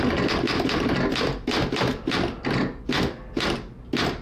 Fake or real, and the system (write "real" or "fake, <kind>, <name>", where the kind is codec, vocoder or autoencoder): real